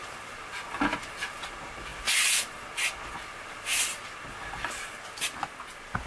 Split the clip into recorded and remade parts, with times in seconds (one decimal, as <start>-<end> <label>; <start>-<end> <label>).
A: 0.0-6.1 recorded